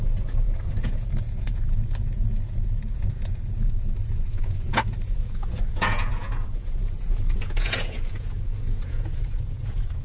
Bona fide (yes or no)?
no